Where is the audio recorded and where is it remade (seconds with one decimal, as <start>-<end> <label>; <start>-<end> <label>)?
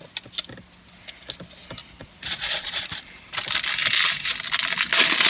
0.0-1.8 recorded; 1.8-2.8 remade; 2.8-5.3 recorded